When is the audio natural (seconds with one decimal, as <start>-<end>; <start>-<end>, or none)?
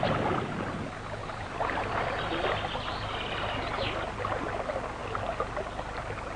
0.0-1.2; 1.8-6.4